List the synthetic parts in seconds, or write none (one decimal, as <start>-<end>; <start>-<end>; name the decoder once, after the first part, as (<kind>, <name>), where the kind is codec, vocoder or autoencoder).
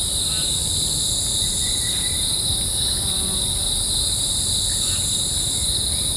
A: none